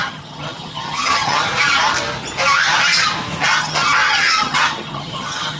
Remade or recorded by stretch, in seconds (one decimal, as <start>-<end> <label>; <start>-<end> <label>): 0.0-1.5 remade; 1.5-3.6 recorded; 3.6-5.6 remade